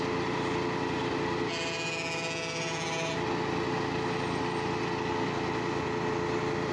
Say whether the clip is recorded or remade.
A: recorded